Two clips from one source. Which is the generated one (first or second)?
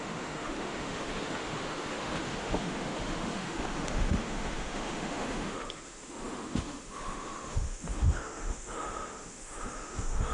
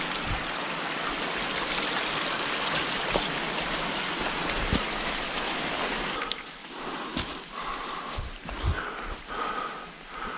first